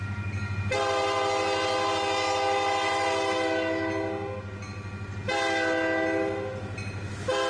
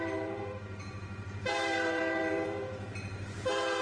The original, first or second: first